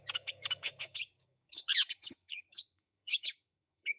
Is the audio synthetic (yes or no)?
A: yes